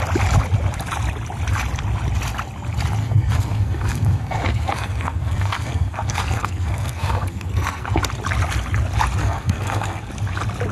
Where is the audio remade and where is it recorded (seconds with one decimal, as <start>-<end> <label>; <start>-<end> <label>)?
0.0-3.0 recorded; 3.0-8.0 remade; 8.0-9.2 recorded; 9.2-10.1 remade; 10.1-10.7 recorded